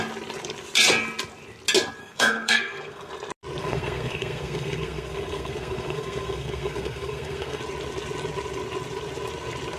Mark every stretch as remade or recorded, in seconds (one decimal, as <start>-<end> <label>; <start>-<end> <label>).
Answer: 0.0-2.0 recorded; 2.0-3.1 remade; 3.1-3.6 recorded; 3.6-7.6 remade; 7.6-9.8 recorded